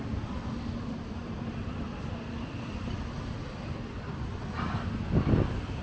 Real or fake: fake